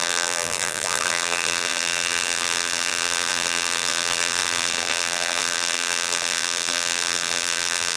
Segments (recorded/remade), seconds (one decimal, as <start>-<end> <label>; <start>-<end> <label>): 0.0-8.0 remade